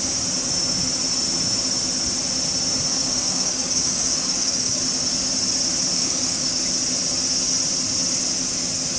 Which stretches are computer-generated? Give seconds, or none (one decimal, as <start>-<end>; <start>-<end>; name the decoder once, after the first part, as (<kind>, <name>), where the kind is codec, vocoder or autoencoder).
3.0-4.8 (codec, DAC); 5.9-6.6